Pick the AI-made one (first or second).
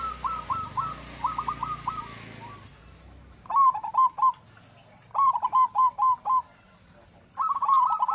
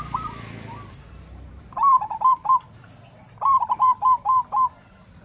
second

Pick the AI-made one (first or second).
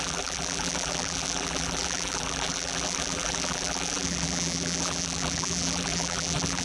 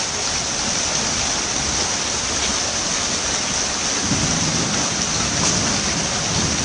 first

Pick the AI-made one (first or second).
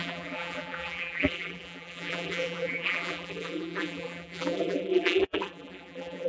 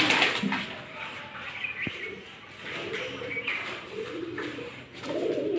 first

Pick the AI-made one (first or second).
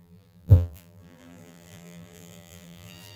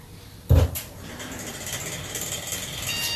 first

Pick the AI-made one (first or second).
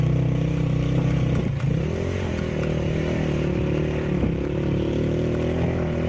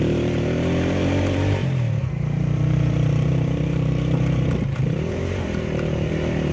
second